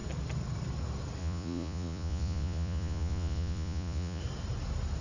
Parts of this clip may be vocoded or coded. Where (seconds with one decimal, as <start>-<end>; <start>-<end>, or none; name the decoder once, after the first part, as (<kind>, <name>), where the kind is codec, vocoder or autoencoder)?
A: 1.2-4.2 (vocoder, Vocos)